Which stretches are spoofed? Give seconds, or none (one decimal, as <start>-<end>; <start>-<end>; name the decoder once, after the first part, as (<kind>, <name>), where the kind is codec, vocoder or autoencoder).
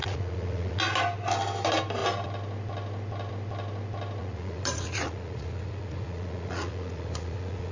0.0-0.8 (vocoder, Vocos); 4.2-7.7